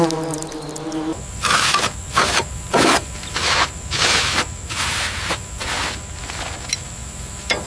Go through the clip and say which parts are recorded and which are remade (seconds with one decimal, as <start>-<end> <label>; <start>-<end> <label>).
0.0-7.7 recorded